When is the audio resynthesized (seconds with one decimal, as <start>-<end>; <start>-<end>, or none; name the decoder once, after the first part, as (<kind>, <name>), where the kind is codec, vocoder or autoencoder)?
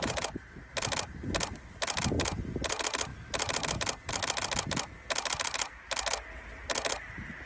none